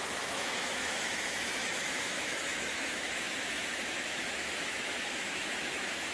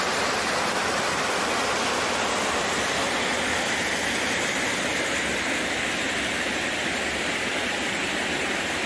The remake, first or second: first